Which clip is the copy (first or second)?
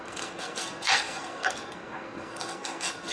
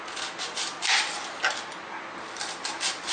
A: first